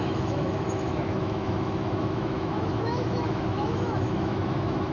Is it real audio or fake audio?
fake